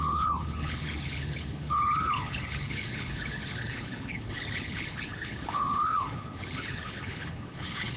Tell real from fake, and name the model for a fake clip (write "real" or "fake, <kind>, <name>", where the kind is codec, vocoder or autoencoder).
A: fake, codec, HILCodec